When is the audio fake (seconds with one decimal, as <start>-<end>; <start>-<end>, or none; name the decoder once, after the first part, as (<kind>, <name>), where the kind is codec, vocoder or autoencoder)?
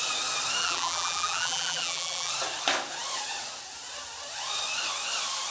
0.6-2.3 (vocoder, BigVGAN v2)